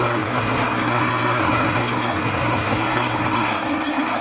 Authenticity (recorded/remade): remade